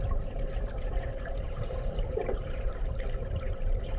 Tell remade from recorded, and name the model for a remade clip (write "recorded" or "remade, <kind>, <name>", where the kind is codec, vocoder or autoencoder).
remade, vocoder, BigVGAN v2